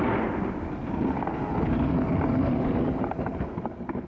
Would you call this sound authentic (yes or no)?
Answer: yes